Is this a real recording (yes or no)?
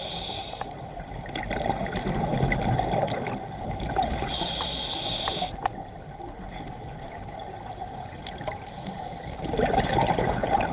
yes